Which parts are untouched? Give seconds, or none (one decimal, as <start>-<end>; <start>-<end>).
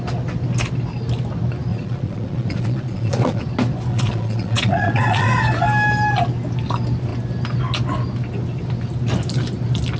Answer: 0.0-1.7; 3.4-3.9; 5.3-10.0